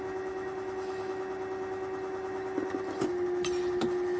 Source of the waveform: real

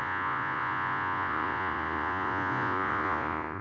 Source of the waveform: fake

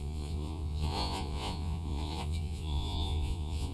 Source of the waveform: fake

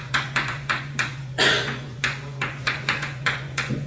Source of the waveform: fake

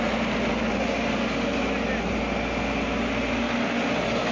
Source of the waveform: real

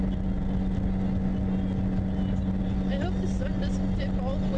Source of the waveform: real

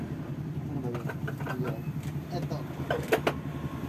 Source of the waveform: real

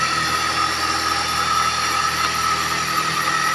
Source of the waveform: real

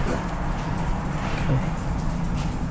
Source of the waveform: fake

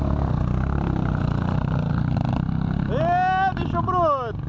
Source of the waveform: real